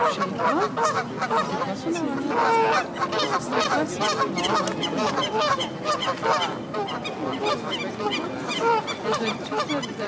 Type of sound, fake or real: real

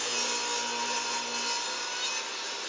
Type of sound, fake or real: real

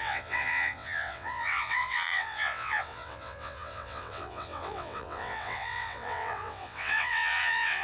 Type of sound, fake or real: fake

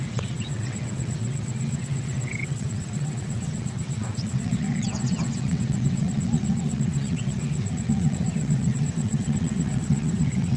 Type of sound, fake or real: fake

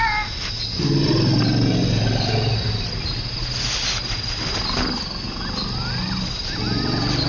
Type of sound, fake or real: real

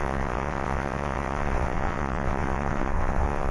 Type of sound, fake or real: fake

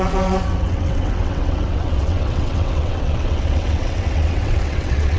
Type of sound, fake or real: fake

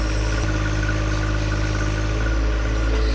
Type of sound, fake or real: real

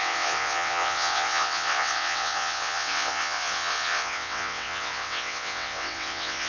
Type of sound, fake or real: fake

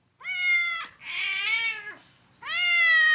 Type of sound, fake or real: real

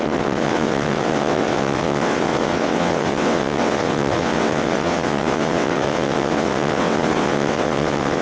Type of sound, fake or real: fake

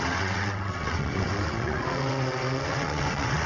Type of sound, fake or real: fake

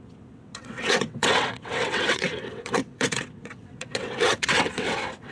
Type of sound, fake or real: fake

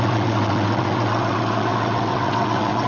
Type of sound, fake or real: fake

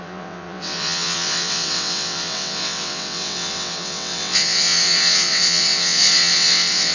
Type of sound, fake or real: fake